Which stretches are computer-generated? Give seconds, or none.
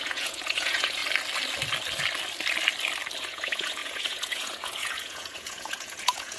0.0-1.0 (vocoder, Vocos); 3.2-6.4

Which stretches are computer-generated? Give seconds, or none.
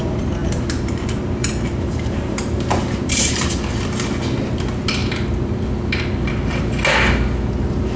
0.4-3.5 (vocoder, BigVGAN v2)